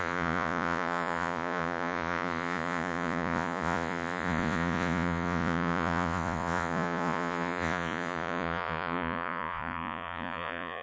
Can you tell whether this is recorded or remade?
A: remade